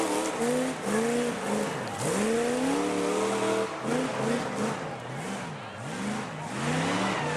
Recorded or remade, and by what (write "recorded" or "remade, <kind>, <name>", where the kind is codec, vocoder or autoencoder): recorded